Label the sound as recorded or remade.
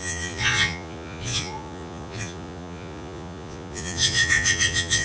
remade